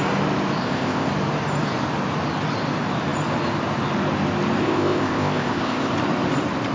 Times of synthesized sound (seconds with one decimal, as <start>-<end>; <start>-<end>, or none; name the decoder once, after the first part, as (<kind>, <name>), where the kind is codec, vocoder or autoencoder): 0.6-1.1 (codec, ZipCodec); 4.6-5.9